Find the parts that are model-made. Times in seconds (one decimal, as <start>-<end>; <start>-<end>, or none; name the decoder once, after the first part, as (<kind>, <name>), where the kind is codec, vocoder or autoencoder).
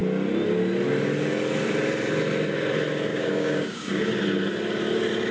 3.1-4.1 (codec, DAC)